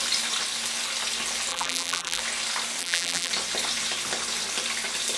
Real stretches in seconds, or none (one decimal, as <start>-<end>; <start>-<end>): 0.0-1.5; 2.2-2.8; 3.3-5.2